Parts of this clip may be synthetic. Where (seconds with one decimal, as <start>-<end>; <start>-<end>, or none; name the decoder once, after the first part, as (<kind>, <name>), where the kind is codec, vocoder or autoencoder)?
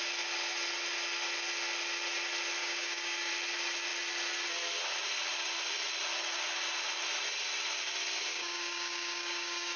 2.6-3.3 (codec, DAC); 8.3-9.8